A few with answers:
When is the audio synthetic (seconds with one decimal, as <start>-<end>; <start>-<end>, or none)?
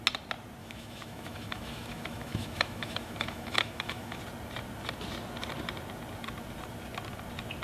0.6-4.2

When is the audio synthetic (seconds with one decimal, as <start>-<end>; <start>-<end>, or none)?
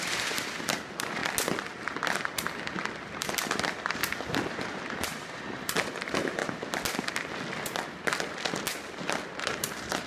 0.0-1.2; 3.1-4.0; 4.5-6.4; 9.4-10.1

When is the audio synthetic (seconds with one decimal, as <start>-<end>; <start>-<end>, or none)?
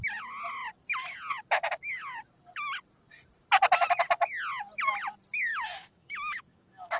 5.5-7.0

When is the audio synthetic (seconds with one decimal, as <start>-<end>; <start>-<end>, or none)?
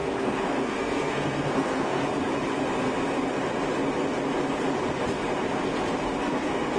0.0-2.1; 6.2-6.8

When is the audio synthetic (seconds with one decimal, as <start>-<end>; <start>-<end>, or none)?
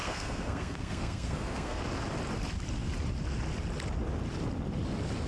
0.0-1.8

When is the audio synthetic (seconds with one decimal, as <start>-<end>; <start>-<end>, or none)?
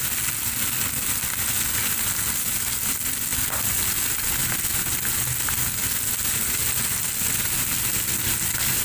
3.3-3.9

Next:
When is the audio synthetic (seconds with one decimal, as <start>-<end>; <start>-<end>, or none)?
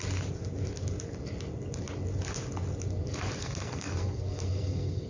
3.4-5.1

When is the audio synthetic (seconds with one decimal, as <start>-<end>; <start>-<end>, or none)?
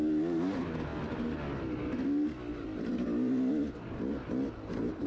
none